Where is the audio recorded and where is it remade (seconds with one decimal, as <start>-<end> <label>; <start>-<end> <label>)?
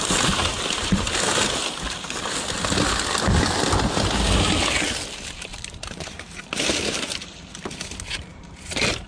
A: 0.0-0.5 recorded; 0.5-1.0 remade; 1.0-5.5 recorded; 5.5-6.5 remade; 6.5-8.3 recorded; 8.3-9.1 remade